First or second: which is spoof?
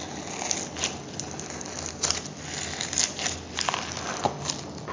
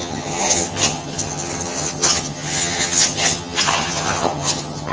second